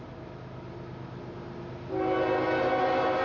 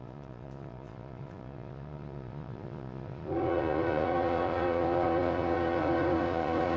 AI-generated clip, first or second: second